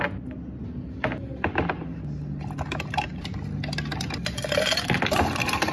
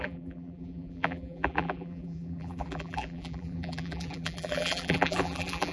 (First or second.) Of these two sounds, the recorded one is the first